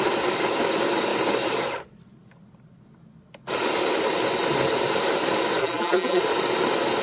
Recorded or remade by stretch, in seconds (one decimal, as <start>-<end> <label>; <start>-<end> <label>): 0.0-5.6 recorded; 5.6-6.2 remade; 6.2-7.0 recorded